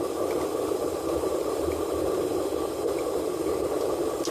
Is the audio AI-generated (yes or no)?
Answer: no